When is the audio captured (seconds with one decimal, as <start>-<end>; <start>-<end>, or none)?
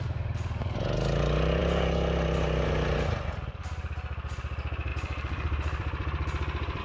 0.0-4.9